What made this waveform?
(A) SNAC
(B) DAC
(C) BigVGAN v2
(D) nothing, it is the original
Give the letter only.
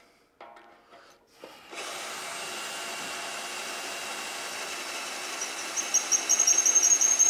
D